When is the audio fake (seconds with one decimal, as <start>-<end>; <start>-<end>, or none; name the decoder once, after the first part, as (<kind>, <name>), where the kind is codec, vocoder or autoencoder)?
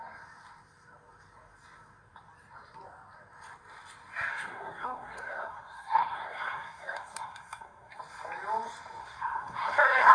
4.3-8.0 (codec, SNAC); 9.0-10.1